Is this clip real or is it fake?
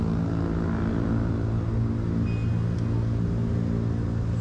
real